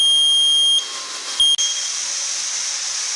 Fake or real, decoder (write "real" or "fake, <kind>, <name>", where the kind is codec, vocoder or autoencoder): real